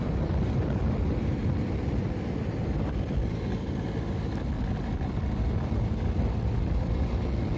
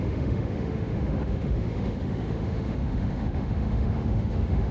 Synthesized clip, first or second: second